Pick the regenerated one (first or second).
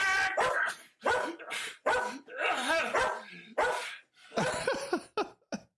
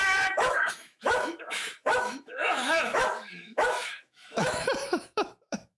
second